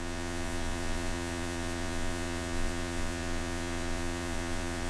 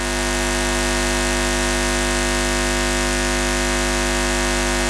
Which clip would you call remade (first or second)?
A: first